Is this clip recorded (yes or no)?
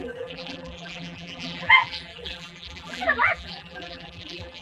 no